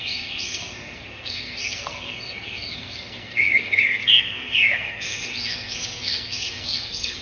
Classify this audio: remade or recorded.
remade